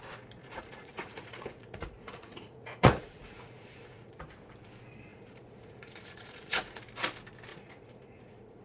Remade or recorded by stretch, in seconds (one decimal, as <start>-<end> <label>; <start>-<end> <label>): 0.0-0.4 recorded; 0.4-4.2 remade; 4.2-5.1 recorded; 5.1-6.8 remade; 6.8-7.5 recorded; 7.5-8.6 remade